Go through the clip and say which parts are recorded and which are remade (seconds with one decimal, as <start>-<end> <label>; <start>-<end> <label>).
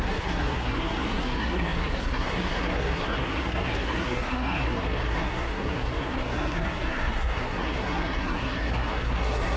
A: 0.0-9.6 remade